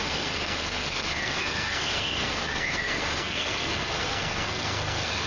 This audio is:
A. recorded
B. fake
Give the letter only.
B